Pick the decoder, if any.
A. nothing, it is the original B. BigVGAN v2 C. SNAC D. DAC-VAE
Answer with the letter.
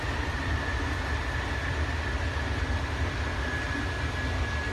A